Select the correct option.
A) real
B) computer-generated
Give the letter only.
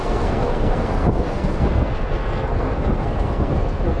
B